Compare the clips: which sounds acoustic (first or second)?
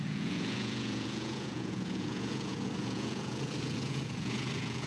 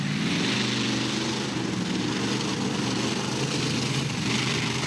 second